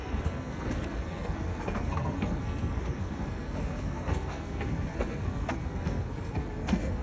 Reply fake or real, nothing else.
fake